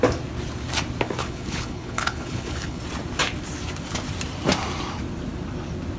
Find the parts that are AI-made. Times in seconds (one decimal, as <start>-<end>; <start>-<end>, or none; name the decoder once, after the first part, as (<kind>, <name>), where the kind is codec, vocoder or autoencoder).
1.2-2.8 (codec, HILCodec)